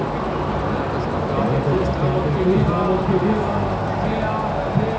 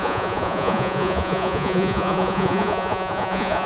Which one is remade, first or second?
second